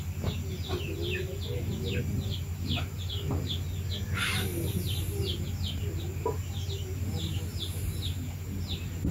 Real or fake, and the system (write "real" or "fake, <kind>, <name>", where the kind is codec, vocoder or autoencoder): real